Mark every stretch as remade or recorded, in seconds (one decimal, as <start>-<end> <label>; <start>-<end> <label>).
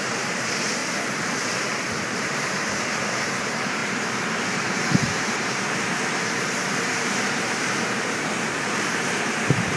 0.0-0.8 remade; 0.8-2.0 recorded; 2.0-3.8 remade; 3.8-4.6 recorded; 4.6-9.8 remade